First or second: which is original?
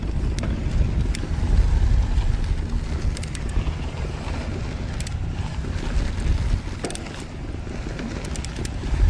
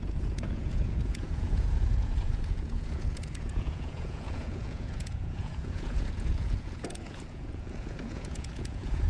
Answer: first